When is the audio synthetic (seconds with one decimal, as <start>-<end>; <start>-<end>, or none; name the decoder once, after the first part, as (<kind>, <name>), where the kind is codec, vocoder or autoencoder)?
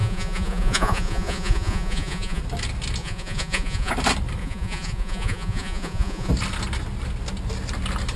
0.0-2.4 (vocoder, Vocos); 3.0-3.9; 4.4-6.3